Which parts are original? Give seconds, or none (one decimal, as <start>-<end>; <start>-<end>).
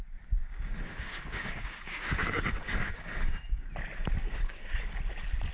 0.0-0.4; 3.7-4.2; 4.9-5.5